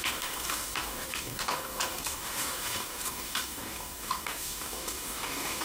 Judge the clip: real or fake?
fake